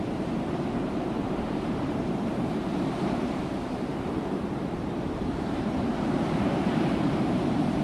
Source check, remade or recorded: remade